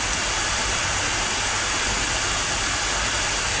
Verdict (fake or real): real